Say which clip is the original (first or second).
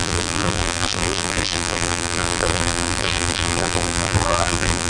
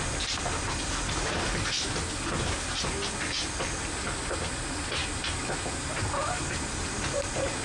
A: second